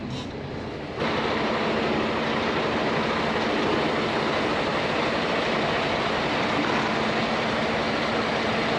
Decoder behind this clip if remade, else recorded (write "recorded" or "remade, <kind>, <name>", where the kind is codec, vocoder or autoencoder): recorded